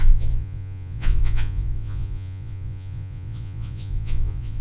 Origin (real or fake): fake